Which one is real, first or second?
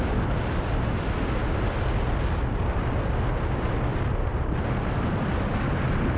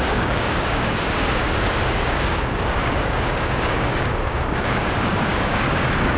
first